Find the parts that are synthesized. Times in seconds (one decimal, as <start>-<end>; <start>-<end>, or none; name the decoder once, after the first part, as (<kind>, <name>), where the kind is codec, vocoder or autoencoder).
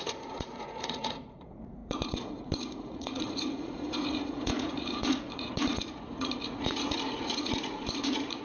0.0-8.4 (vocoder, Vocos)